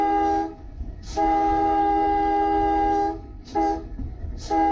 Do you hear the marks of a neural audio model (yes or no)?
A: yes